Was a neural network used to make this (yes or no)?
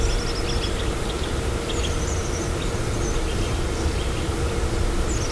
no